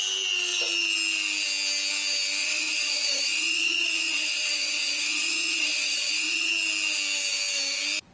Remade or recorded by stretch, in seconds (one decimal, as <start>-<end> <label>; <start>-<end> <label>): 0.0-2.4 recorded; 2.4-6.5 remade; 6.5-8.1 recorded

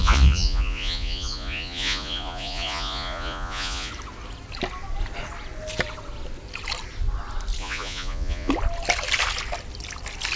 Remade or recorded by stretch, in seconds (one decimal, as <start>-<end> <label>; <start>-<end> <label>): 0.0-3.9 remade; 3.9-7.6 recorded; 7.6-8.5 remade; 8.5-10.4 recorded

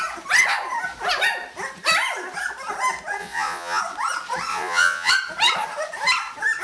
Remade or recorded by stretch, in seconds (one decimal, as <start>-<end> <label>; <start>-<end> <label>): 0.0-3.2 recorded; 3.2-3.8 remade; 3.8-4.5 recorded; 4.5-5.1 remade; 5.1-6.6 recorded

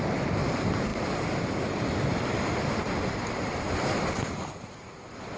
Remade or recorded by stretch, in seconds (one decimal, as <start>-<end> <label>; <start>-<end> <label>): 0.0-5.4 recorded